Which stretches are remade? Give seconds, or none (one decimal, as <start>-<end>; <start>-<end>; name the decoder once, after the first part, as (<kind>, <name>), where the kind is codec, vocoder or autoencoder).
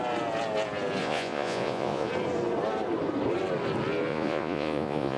1.0-2.1 (vocoder, Vocos); 4.1-5.2